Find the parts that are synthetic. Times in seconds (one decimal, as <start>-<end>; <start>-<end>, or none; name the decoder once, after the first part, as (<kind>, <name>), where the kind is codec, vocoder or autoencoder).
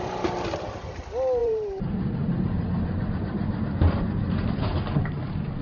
1.4-4.8 (vocoder, BigVGAN v2)